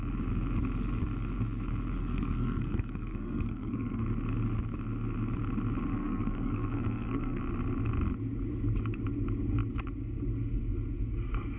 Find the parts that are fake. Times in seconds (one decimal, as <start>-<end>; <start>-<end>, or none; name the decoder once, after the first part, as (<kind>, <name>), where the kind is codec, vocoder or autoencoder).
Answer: 2.0-4.1 (codec, SNAC); 5.9-7.4